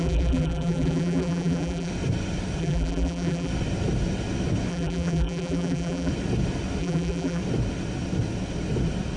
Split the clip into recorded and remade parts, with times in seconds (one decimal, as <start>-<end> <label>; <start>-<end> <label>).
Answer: 0.0-1.9 remade; 1.9-2.6 recorded; 2.6-3.5 remade; 3.5-4.7 recorded; 4.7-6.1 remade; 6.1-6.8 recorded; 6.8-7.4 remade; 7.4-9.2 recorded